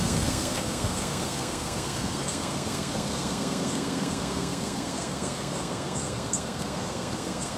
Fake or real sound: fake